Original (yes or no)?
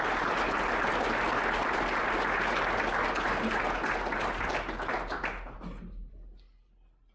yes